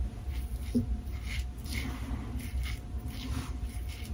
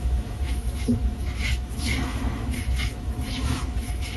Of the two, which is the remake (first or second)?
second